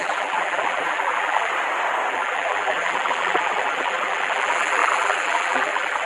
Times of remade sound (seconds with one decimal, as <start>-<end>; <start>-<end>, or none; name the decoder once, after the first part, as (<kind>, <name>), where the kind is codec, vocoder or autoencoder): 0.0-1.5 (vocoder, BigVGAN v2); 2.1-6.1